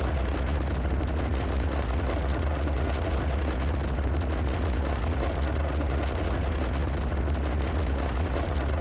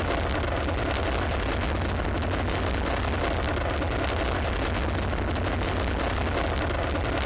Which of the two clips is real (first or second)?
second